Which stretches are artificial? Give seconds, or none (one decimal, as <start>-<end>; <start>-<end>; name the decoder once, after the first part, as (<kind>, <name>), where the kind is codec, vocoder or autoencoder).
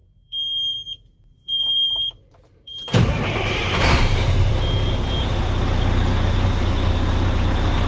0.0-4.5 (vocoder, BigVGAN v2)